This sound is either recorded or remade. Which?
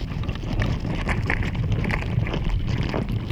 recorded